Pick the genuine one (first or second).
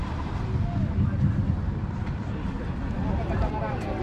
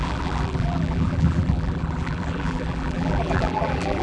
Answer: first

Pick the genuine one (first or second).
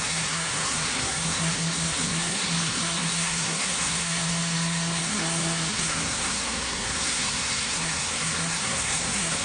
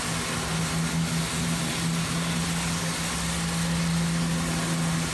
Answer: second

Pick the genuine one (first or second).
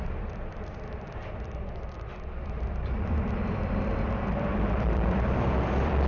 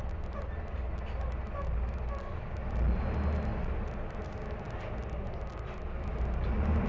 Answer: second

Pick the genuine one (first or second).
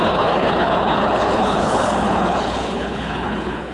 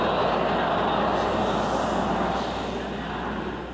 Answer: second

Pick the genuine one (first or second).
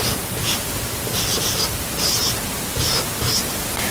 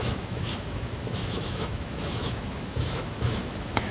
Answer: first